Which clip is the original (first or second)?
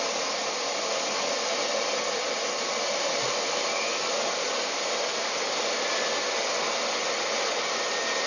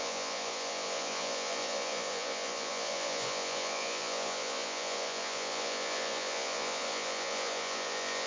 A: first